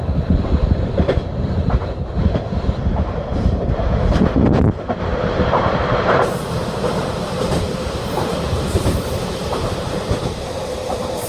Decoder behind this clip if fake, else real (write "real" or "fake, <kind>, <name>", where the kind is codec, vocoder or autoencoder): fake, vocoder, BigVGAN v2